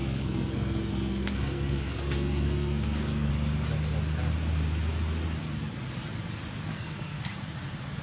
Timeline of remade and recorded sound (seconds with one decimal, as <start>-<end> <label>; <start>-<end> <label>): 0.0-3.3 remade; 3.3-6.7 recorded; 6.7-7.2 remade; 7.2-8.0 recorded